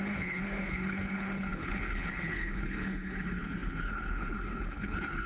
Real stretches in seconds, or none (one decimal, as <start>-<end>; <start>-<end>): none